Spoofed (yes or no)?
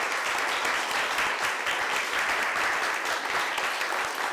no